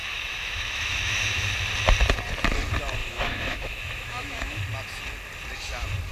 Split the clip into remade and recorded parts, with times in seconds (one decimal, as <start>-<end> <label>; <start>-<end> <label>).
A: 0.0-1.5 remade; 1.5-3.0 recorded; 3.0-4.6 remade; 4.6-6.1 recorded